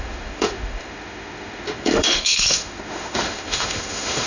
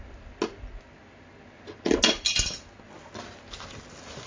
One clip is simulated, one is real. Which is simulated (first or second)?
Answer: first